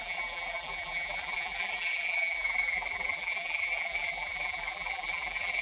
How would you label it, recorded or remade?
remade